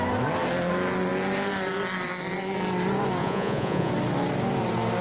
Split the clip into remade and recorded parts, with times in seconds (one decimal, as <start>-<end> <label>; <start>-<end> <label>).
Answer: 0.0-3.2 recorded; 3.2-3.9 remade; 3.9-5.0 recorded